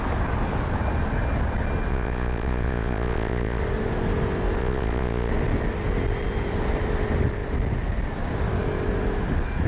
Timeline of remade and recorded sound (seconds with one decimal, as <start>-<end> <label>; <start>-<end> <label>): 0.0-1.9 recorded; 1.9-3.6 remade; 3.6-4.6 recorded; 4.6-5.3 remade; 5.3-9.7 recorded